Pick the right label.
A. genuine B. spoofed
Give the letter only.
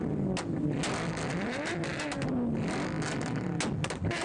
A